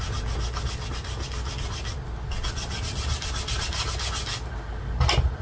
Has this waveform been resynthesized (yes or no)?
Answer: no